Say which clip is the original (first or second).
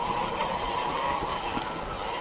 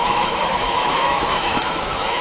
first